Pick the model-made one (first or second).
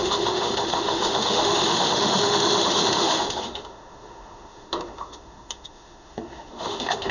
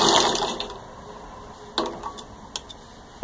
first